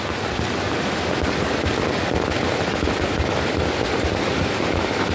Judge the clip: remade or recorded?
recorded